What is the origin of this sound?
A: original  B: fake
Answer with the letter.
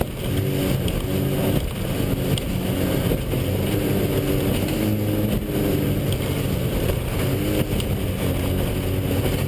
A